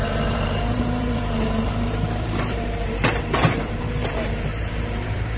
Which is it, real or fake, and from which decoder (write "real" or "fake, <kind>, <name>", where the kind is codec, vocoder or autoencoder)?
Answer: fake, vocoder, BigVGAN v2